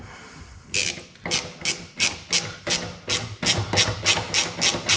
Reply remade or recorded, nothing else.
recorded